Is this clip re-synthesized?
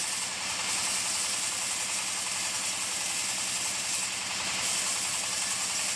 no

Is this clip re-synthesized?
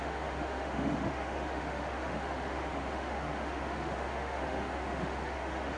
yes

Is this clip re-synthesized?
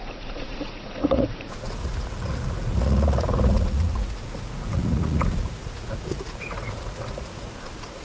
yes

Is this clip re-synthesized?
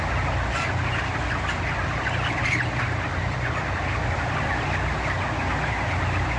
no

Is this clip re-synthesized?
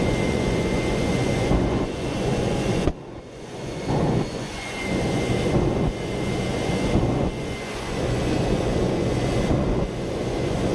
yes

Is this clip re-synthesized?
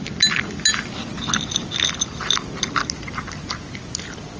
no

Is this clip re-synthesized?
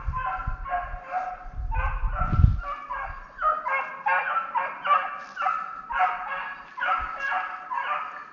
no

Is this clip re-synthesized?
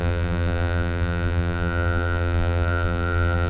yes